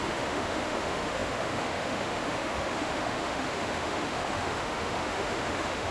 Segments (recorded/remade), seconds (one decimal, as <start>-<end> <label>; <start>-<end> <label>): 0.0-5.9 remade